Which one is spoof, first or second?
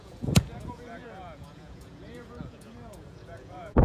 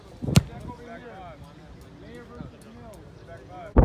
first